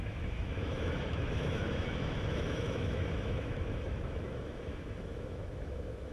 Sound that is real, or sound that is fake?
fake